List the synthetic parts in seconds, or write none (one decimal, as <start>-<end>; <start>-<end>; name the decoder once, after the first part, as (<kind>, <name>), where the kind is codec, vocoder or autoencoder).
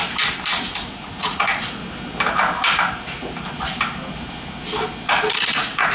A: 0.7-1.8 (vocoder, Vocos); 5.3-5.9